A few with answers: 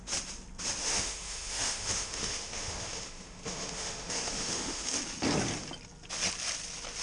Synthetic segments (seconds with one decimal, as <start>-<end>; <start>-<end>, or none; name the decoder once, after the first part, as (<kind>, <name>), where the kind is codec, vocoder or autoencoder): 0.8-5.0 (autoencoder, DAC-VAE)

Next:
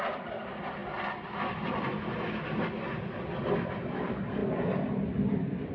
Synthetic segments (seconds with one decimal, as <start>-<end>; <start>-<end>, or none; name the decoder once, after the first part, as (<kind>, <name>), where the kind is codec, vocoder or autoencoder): 0.0-0.8 (vocoder, BigVGAN v2); 3.4-4.4

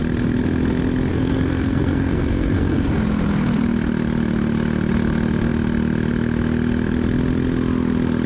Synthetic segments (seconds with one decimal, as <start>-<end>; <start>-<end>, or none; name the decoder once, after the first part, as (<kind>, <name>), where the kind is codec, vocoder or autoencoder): 1.1-2.9 (codec, SNAC)

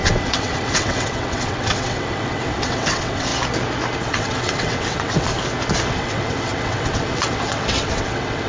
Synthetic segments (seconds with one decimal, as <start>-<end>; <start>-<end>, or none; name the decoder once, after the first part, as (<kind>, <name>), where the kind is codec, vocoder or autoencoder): 0.0-3.3 (vocoder, WaveNeXt); 4.0-5.3; 5.9-8.5

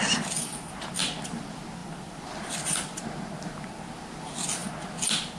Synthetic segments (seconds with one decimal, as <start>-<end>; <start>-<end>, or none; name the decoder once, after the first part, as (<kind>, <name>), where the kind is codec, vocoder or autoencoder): 1.8-3.0 (vocoder, BigVGAN v2)

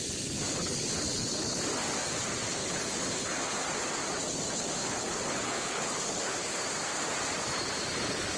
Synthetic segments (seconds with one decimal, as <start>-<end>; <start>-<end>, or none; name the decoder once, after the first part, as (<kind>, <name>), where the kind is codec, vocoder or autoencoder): 0.6-1.6 (codec, HILCodec); 2.6-3.4; 4.8-6.6

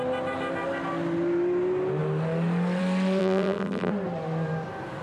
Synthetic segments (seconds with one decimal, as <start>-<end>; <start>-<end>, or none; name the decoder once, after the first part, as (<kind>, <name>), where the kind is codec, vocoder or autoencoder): 3.2-3.9 (vocoder, BigVGAN v2)